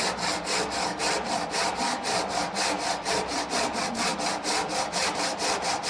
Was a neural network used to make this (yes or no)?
no